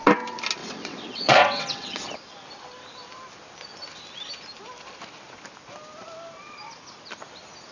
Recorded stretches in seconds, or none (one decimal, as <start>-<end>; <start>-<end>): 0.0-0.6; 2.0-7.7